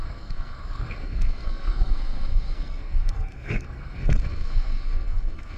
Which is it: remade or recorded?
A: remade